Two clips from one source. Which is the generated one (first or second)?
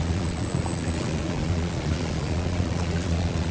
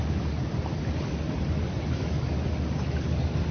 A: first